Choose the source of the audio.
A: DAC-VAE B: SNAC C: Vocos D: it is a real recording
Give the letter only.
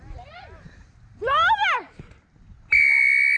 D